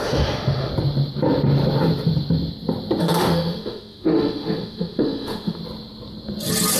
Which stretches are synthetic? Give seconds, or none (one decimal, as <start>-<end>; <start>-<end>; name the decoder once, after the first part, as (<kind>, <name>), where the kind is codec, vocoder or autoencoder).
0.0-0.7 (autoencoder, DAC-VAE); 3.0-5.6